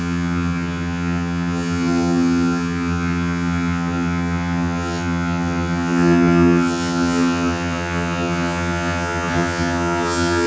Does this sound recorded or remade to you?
remade